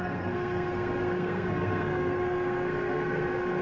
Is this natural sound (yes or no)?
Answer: no